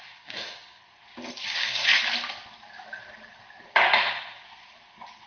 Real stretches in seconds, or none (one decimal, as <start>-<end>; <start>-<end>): 0.8-1.4; 1.9-5.3